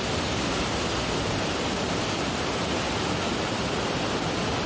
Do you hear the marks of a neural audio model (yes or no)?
no